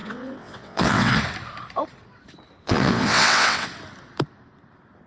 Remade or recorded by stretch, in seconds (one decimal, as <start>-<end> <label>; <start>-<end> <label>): 0.0-1.2 remade; 1.2-2.6 recorded; 2.6-3.7 remade; 3.7-5.1 recorded